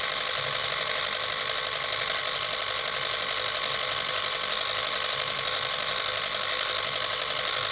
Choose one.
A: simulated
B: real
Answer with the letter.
B